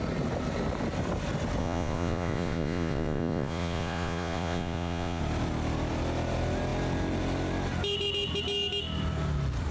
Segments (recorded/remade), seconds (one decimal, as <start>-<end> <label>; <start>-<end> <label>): 0.0-1.6 recorded; 1.6-5.2 remade; 5.2-9.7 recorded

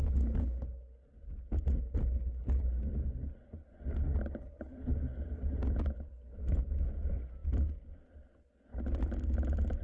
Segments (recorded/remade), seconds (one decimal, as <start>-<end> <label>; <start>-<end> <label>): 0.0-9.8 recorded

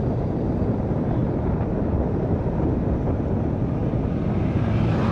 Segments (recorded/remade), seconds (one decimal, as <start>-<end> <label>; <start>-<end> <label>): 0.0-5.1 recorded

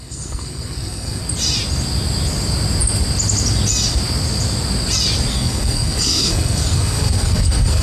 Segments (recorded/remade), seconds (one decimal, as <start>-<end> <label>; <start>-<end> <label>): 0.0-1.2 remade; 1.2-5.3 recorded; 5.3-7.8 remade

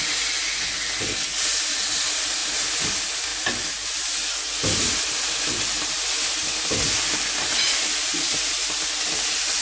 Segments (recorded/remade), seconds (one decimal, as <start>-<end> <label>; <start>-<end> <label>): 0.0-9.6 recorded

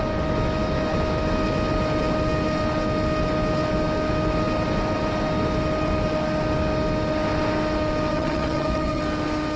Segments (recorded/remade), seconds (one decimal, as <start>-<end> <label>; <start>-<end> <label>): 0.0-8.1 recorded; 8.1-9.0 remade; 9.0-9.6 recorded